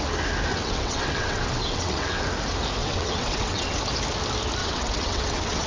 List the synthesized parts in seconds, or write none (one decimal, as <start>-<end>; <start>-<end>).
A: 0.5-2.2; 2.8-3.8; 4.6-5.7